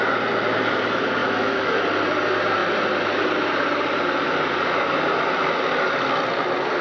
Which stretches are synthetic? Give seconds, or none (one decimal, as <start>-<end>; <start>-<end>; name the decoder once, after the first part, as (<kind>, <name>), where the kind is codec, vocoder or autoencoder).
1.2-1.8 (autoencoder, DAC-VAE)